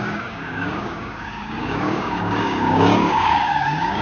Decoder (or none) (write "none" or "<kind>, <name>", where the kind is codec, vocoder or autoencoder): codec, DAC